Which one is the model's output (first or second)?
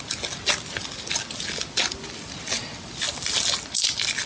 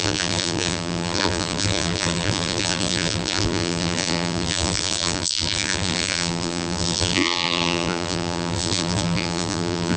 second